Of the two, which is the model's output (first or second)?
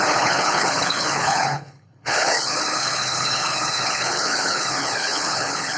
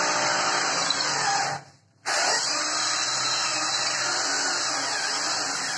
first